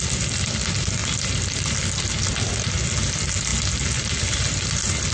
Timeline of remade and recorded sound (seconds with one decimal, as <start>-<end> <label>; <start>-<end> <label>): 0.0-5.1 recorded

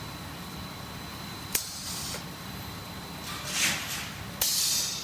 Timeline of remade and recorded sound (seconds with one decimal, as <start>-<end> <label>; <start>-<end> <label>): 0.0-1.1 recorded; 1.1-2.8 remade; 2.8-5.0 recorded

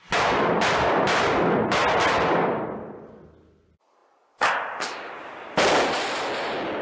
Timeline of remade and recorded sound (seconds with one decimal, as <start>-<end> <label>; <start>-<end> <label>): 0.0-6.8 recorded

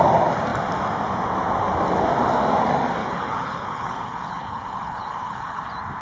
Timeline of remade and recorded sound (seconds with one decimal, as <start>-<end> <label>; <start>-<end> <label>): 0.0-3.0 recorded; 3.0-5.6 remade; 5.6-6.0 recorded

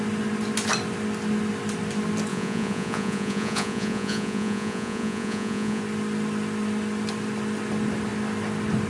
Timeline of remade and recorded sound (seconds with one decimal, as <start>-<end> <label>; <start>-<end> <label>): 0.0-2.3 recorded; 2.3-5.8 remade; 5.8-8.9 recorded

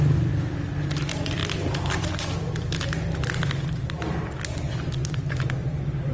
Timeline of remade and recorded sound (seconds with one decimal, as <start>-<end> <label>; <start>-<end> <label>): 0.0-6.1 recorded

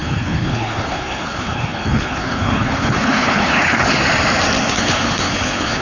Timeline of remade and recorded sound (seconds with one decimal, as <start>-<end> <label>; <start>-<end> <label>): 0.0-4.0 remade; 4.0-4.7 recorded; 4.7-5.8 remade